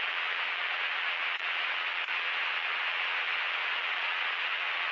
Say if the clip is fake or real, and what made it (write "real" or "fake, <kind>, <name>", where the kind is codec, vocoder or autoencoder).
fake, vocoder, Vocos